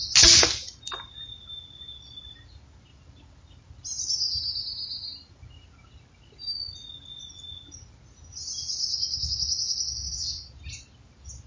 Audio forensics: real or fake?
real